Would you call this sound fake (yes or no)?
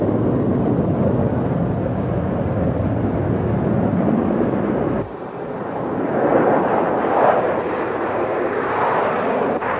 no